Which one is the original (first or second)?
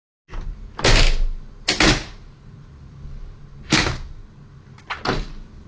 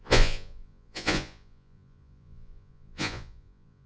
first